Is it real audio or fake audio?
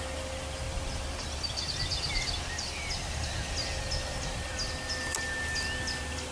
real